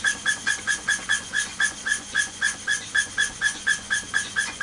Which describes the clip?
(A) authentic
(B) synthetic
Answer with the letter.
B